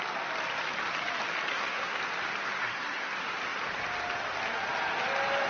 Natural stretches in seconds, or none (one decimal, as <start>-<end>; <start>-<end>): 0.0-1.5; 2.0-2.6; 3.1-5.5

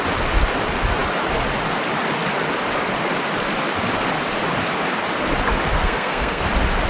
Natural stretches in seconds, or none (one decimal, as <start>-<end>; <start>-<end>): 0.0-5.8; 6.4-6.9

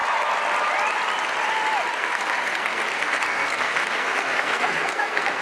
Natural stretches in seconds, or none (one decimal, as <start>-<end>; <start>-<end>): 0.0-1.9